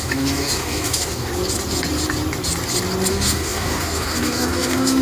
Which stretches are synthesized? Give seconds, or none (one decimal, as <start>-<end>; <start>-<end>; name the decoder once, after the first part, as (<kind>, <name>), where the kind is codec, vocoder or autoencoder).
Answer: 0.0-1.3 (codec, DAC); 3.1-5.0